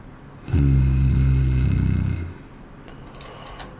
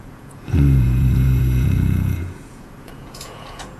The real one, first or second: first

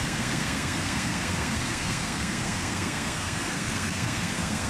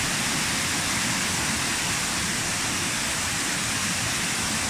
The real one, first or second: second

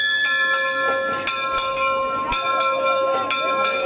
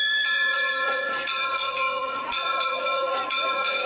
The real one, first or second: first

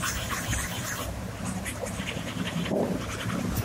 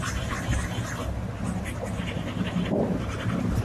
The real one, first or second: second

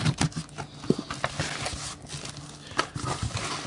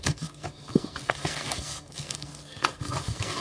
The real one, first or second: first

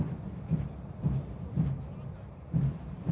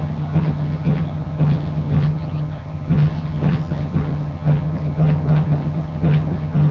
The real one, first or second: first